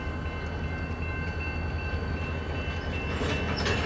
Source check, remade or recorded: recorded